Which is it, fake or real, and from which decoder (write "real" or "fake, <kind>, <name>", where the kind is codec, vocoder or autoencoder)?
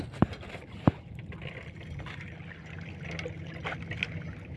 real